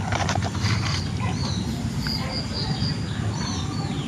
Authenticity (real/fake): real